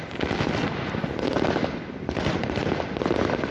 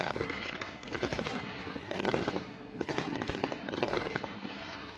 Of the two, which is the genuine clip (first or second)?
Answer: first